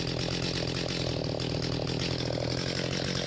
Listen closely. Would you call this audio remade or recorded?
recorded